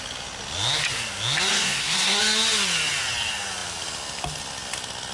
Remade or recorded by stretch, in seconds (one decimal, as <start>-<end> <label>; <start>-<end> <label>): 0.0-1.5 recorded; 1.5-2.2 remade; 2.2-5.1 recorded